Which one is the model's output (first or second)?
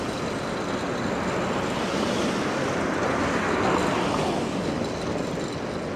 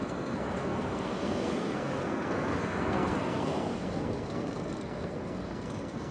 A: second